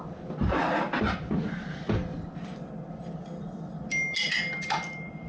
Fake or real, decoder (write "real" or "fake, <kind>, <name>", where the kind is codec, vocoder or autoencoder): real